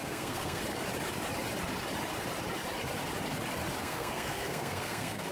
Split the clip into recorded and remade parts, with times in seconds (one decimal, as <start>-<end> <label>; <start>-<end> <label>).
0.0-0.6 remade; 0.6-3.8 recorded; 3.8-5.3 remade

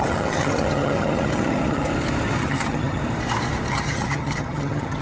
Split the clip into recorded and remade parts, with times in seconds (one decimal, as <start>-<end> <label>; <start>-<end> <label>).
0.0-1.9 remade; 1.9-2.4 recorded; 2.4-3.0 remade; 3.0-3.7 recorded; 3.7-5.0 remade

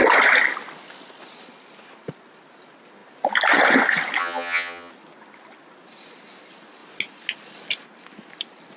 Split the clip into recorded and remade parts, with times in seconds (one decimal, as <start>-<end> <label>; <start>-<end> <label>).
0.0-4.2 recorded; 4.2-4.9 remade; 4.9-8.8 recorded

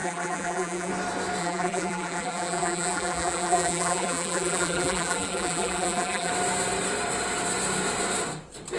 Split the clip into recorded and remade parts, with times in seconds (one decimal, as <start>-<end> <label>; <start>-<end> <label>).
0.0-0.9 remade; 0.9-1.4 recorded; 1.4-6.3 remade; 6.3-8.8 recorded

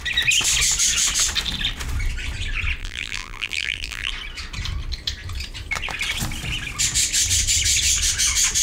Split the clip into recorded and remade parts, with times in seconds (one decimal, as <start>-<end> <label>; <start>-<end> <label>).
0.0-2.8 recorded; 2.8-4.1 remade; 4.1-8.6 recorded